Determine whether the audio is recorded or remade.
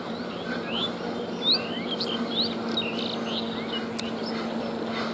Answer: recorded